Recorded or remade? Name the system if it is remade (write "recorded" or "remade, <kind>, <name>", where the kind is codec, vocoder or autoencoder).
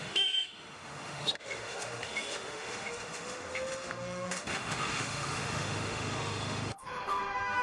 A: remade, autoencoder, DAC-VAE